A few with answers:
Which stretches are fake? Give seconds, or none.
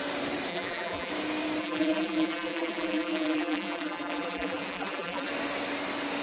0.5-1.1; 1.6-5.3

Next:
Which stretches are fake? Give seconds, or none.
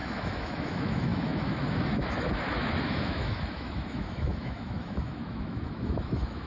0.0-6.5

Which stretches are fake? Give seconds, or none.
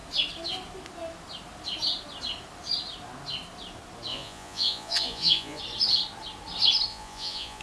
4.1-5.6; 6.9-7.6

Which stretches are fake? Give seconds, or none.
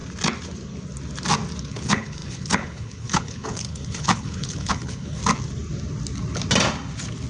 1.6-5.2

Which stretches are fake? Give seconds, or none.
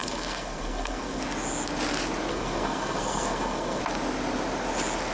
0.0-1.2; 2.3-3.8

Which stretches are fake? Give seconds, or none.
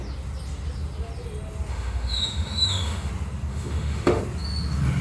1.7-3.1; 3.5-4.2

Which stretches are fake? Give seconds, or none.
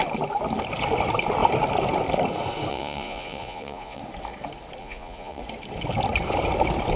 2.7-4.0; 4.8-5.4